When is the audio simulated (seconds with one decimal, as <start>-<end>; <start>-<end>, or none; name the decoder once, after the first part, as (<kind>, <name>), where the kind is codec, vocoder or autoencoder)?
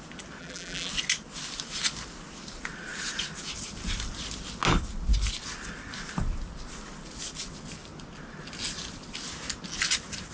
0.4-0.9 (vocoder, BigVGAN v2)